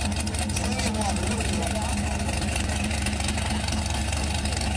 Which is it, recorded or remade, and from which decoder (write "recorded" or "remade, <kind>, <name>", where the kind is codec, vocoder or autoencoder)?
recorded